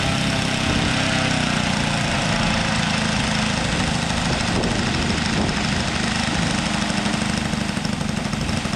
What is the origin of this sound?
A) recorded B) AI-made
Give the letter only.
A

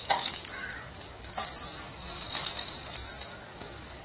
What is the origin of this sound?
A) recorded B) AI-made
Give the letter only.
B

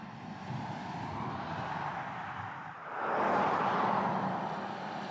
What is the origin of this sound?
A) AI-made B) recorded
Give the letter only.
B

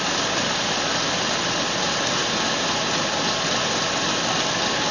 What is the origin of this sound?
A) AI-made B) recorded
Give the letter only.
B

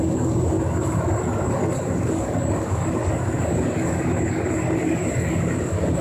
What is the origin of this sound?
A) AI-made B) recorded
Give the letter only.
A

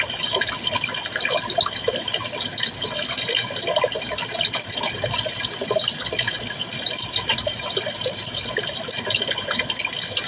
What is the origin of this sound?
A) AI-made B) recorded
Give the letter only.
B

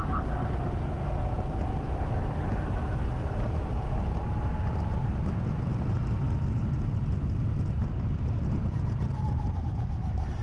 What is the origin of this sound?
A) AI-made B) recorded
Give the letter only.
B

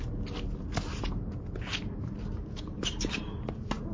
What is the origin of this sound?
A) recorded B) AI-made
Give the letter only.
A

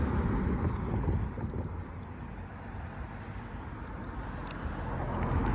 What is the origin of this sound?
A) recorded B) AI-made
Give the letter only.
A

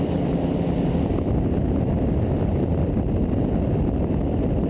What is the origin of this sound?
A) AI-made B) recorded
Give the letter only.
B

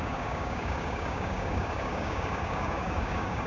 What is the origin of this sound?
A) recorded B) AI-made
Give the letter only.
B